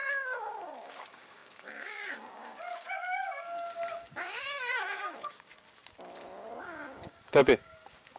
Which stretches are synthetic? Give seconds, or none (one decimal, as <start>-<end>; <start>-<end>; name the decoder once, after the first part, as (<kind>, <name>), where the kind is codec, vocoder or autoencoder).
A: 0.0-5.5 (codec, DAC); 6.6-8.2